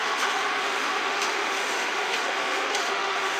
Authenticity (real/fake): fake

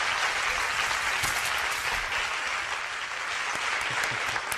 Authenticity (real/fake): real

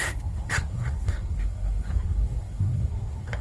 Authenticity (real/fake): fake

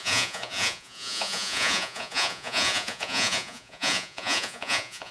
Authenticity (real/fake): fake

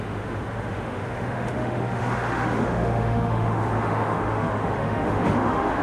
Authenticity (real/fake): fake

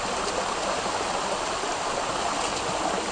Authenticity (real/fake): real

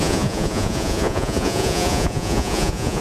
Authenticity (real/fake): fake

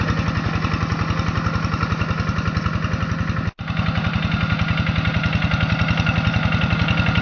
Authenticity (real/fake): real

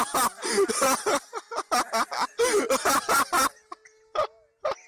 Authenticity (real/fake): real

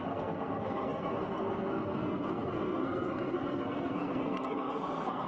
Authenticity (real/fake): fake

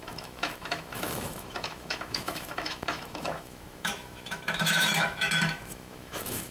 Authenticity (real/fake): fake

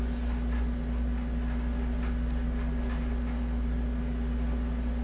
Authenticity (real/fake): real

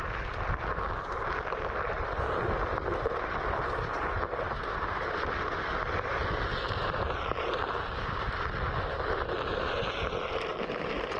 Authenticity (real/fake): real